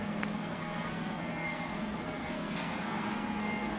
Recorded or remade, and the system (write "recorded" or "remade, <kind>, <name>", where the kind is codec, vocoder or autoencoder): remade, codec, SNAC